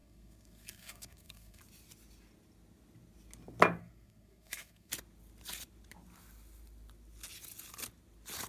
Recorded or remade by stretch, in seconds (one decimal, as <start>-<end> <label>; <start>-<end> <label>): 0.0-1.6 remade; 1.6-3.8 recorded; 3.8-4.9 remade; 4.9-8.5 recorded